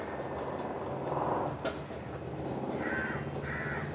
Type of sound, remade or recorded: recorded